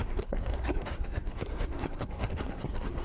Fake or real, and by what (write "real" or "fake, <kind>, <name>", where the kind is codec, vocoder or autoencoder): fake, codec, SNAC